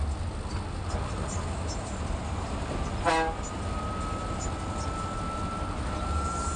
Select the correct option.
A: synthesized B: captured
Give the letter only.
B